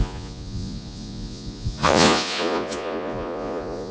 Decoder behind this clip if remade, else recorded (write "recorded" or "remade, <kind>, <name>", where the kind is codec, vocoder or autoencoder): remade, vocoder, Vocos